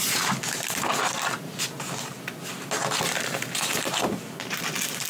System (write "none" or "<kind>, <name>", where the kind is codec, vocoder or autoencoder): none